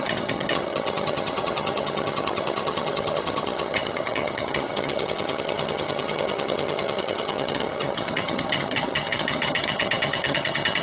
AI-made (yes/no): yes